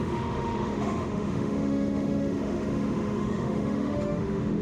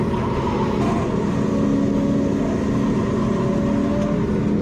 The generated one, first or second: first